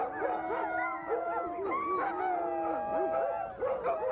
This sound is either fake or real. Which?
real